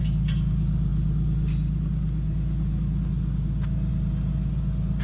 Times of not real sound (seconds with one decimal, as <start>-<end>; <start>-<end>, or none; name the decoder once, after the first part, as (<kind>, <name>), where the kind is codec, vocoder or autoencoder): none